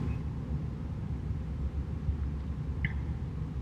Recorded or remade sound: recorded